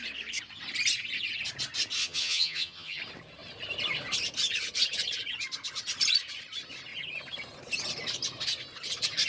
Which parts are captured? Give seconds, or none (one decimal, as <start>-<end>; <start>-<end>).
0.0-2.0; 3.0-9.3